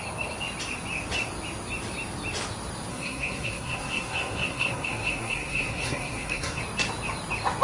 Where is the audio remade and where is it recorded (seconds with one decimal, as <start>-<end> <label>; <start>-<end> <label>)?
0.0-2.9 recorded; 2.9-6.6 remade; 6.6-7.6 recorded